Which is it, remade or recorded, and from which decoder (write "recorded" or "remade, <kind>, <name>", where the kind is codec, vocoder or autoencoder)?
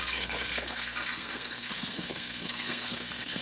remade, codec, SNAC